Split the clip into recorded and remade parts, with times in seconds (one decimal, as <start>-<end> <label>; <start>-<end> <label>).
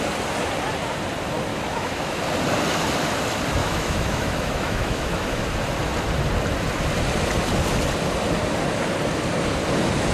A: 0.0-1.5 recorded; 1.5-2.2 remade; 2.2-3.6 recorded; 3.6-5.4 remade; 5.4-10.1 recorded